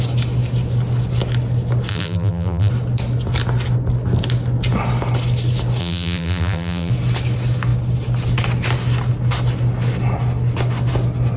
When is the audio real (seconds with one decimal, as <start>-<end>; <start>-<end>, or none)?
0.0-1.9; 2.7-5.8; 6.9-11.4